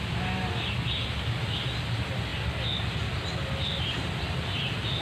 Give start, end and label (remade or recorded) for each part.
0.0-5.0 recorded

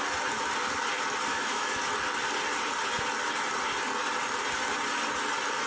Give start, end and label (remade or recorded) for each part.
0.0-1.3 recorded; 1.3-1.8 remade; 1.8-5.7 recorded

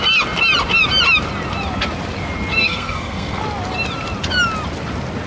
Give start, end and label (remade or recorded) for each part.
0.0-2.6 recorded; 2.6-3.4 remade; 3.4-5.3 recorded

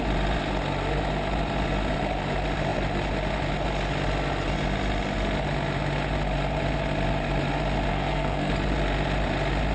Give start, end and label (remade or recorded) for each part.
0.0-7.9 recorded; 7.9-8.5 remade; 8.5-9.7 recorded

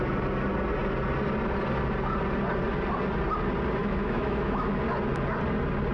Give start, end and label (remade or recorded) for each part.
0.0-3.8 recorded; 3.8-4.8 remade; 4.8-5.9 recorded

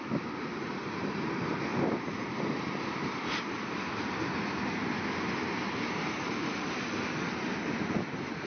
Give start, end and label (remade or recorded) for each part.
0.0-0.5 recorded; 0.5-1.1 remade; 1.1-1.7 recorded; 1.7-3.7 remade; 3.7-8.5 recorded

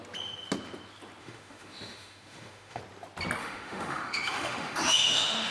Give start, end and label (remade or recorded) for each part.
0.0-1.2 recorded; 1.2-2.8 remade; 2.8-3.4 recorded; 3.4-5.5 remade